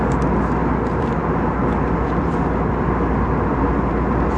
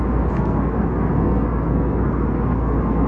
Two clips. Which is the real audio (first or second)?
first